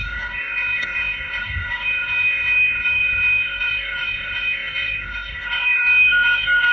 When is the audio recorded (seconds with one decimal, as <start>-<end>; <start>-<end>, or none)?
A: none